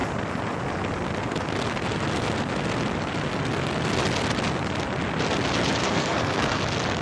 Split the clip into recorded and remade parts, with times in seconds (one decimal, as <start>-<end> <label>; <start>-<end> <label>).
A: 0.0-5.8 recorded; 5.8-6.6 remade; 6.6-7.0 recorded